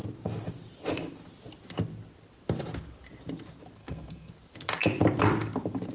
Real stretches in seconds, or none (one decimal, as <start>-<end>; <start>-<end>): 0.0-3.8; 4.3-5.9